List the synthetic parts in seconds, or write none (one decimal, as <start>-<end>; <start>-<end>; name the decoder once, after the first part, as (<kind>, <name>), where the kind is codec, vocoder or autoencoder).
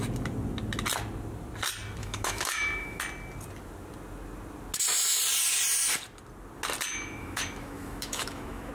2.0-3.0 (autoencoder, DAC-VAE); 6.9-8.7